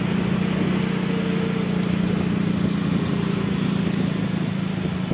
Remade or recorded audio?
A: recorded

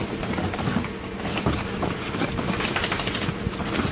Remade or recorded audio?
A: recorded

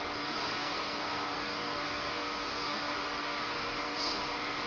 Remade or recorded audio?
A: remade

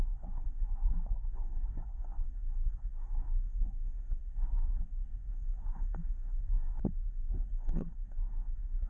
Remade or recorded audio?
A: remade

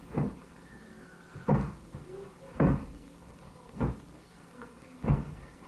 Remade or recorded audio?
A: remade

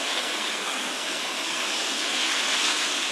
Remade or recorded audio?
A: remade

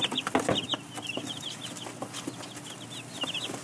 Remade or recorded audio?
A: recorded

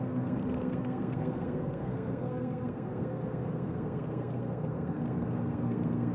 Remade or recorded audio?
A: remade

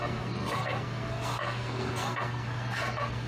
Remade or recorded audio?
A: remade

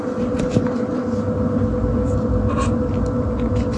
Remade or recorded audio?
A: recorded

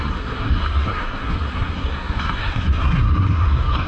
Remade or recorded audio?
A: remade